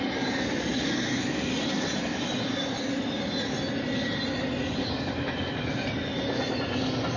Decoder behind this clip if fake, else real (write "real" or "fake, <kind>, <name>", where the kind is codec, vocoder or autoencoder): real